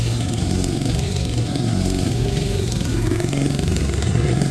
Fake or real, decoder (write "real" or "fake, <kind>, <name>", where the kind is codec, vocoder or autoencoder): fake, codec, SNAC